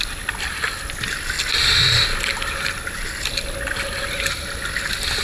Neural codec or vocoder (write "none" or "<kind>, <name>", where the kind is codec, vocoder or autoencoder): none